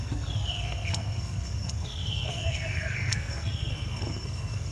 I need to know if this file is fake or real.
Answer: fake